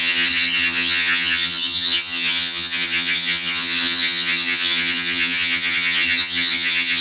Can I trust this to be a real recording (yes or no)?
no